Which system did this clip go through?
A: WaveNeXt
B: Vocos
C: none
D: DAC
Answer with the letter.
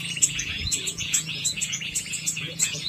B